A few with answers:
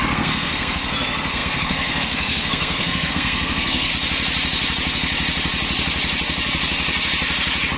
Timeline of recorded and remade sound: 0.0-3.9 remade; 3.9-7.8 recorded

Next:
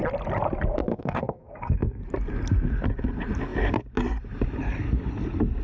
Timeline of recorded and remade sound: 0.0-0.9 recorded; 0.9-2.0 remade; 2.0-5.6 recorded

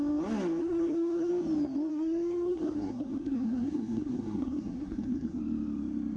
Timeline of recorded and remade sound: 0.0-0.6 recorded; 0.6-1.3 remade; 1.3-1.9 recorded; 1.9-5.4 remade; 5.4-6.2 recorded

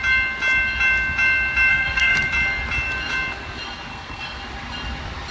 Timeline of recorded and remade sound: 0.0-1.7 recorded; 1.7-2.3 remade; 2.3-3.9 recorded; 3.9-4.4 remade; 4.4-5.3 recorded

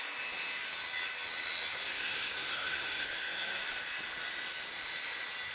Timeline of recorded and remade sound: 0.0-1.7 recorded; 1.7-3.6 remade; 3.6-5.5 recorded

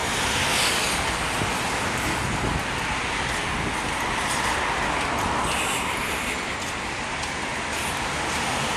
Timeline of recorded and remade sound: 0.0-8.8 recorded

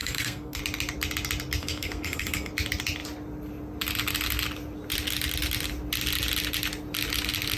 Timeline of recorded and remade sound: 0.0-0.6 remade; 0.6-1.6 recorded; 1.6-2.5 remade; 2.5-7.6 recorded